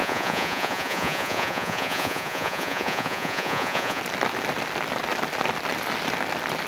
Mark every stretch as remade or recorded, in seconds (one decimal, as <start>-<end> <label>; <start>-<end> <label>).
0.0-4.0 remade; 4.0-6.7 recorded